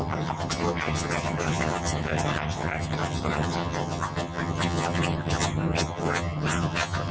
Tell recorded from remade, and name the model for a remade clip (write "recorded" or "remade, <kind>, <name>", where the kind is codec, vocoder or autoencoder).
remade, vocoder, HiFi-GAN